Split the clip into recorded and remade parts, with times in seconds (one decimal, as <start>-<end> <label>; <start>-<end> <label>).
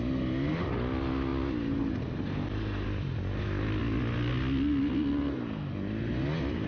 0.0-6.7 recorded